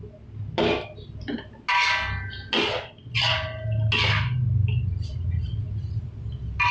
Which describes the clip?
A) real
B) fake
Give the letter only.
A